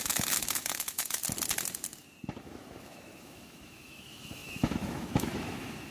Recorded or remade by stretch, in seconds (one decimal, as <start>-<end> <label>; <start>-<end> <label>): 0.0-1.2 remade; 1.2-2.4 recorded; 2.4-5.9 remade